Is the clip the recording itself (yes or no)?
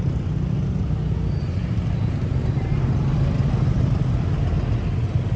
yes